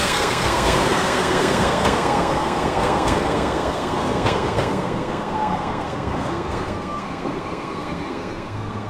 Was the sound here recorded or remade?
remade